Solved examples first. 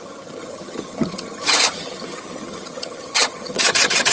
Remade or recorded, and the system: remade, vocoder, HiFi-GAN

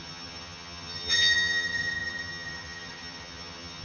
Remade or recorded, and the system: remade, vocoder, HiFi-GAN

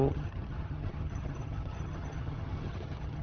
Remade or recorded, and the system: remade, vocoder, HiFi-GAN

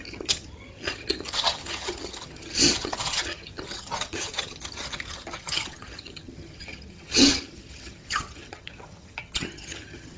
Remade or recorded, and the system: remade, vocoder, HiFi-GAN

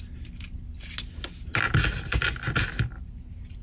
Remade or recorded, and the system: recorded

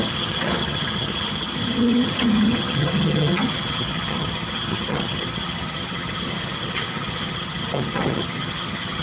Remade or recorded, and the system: remade, vocoder, HiFi-GAN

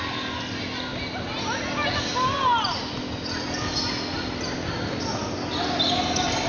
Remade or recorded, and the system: recorded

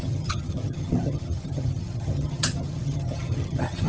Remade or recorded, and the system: remade, vocoder, HiFi-GAN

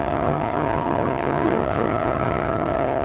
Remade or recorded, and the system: remade, vocoder, HiFi-GAN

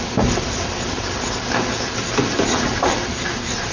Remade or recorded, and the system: recorded